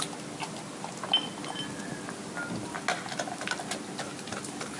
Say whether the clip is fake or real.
real